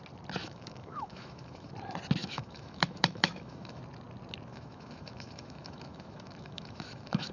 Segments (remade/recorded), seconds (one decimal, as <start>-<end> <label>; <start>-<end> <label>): 0.0-0.4 recorded; 0.4-1.7 remade; 1.7-2.2 recorded; 2.2-3.8 remade; 3.8-4.5 recorded; 4.5-7.3 remade

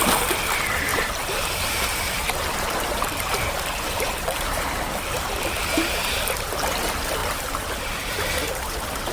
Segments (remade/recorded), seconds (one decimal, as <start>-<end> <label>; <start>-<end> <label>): 0.0-0.9 recorded; 0.9-5.7 remade; 5.7-7.2 recorded; 7.2-8.1 remade; 8.1-9.1 recorded